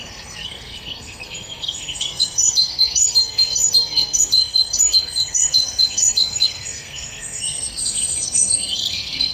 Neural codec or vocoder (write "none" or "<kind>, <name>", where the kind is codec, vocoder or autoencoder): codec, SNAC